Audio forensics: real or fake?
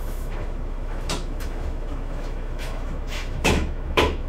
fake